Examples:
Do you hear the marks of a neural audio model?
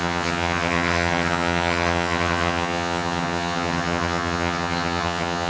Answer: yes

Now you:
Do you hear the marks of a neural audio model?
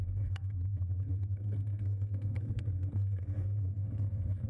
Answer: yes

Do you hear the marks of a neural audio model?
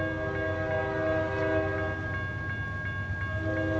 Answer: no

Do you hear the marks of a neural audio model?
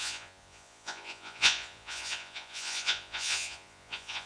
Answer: yes